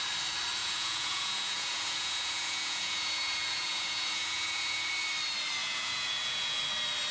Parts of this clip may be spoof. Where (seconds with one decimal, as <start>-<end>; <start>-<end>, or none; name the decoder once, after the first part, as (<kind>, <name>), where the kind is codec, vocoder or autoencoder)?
0.6-4.9 (vocoder, Vocos); 5.6-6.6